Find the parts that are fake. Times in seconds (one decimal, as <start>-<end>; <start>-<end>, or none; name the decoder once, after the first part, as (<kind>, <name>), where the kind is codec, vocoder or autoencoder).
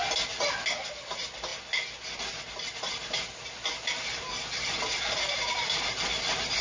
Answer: none